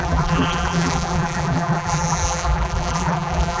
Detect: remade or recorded remade